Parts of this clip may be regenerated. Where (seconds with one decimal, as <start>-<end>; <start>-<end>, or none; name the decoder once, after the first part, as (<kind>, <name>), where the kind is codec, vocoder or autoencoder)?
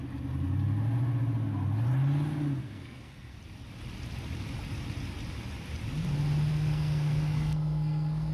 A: 2.6-3.4 (codec, SNAC); 6.5-8.3